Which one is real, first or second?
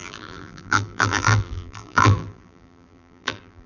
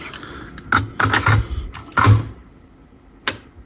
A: second